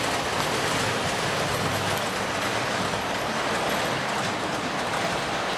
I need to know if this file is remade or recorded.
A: recorded